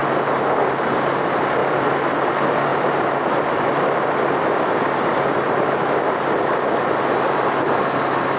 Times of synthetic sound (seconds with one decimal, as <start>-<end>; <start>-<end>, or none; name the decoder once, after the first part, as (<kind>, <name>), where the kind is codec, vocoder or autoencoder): 1.6-2.3 (vocoder, BigVGAN v2)